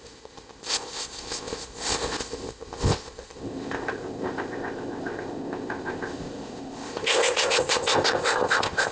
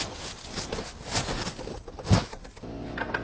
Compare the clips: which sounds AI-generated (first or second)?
first